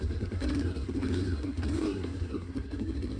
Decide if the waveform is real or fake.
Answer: fake